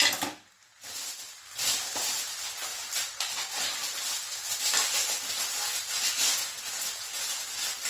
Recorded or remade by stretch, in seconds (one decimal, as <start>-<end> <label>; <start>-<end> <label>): 0.0-2.7 recorded; 2.7-4.0 remade; 4.0-7.9 recorded